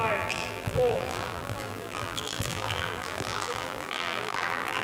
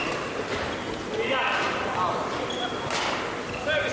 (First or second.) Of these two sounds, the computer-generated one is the first